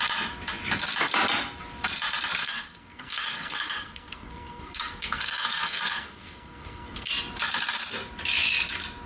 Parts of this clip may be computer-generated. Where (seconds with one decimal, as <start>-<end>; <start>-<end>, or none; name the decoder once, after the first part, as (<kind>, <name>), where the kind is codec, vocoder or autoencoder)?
2.4-7.1 (codec, SNAC)